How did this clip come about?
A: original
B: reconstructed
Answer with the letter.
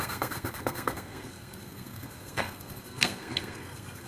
B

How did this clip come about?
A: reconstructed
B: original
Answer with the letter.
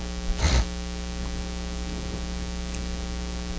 B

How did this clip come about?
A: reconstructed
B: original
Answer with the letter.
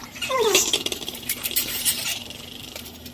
A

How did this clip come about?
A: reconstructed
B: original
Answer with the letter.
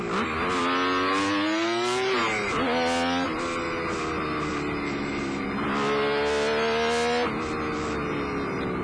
B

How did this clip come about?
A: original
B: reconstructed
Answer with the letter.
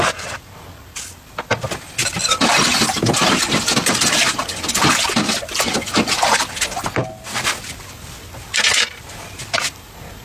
A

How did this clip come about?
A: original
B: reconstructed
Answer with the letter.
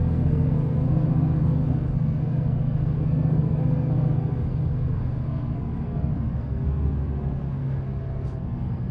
B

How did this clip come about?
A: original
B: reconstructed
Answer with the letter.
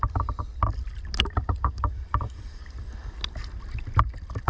A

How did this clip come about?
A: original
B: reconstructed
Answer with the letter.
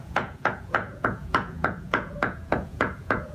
B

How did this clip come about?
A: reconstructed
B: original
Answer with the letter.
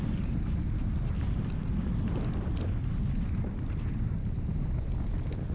B